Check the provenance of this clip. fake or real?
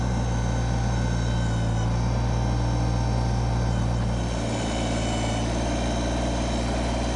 real